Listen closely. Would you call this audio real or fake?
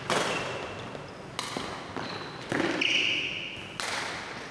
real